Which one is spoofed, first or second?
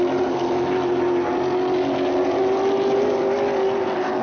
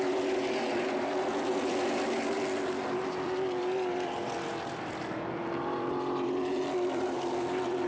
second